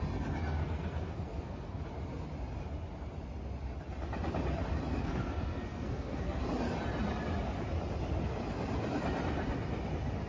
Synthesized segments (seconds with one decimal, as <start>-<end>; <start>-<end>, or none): 0.6-1.8; 5.0-6.4